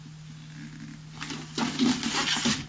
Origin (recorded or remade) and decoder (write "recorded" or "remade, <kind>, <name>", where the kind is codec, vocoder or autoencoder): recorded